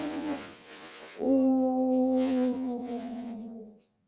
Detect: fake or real fake